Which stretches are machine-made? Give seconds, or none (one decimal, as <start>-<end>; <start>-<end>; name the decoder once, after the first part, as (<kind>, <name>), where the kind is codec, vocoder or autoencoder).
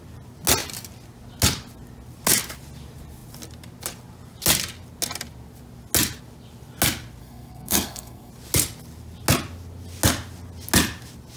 7.2-8.3 (codec, SNAC)